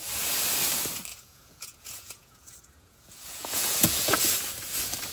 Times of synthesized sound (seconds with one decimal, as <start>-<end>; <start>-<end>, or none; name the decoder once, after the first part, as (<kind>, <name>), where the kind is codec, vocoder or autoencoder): 1.1-4.2 (vocoder, Vocos)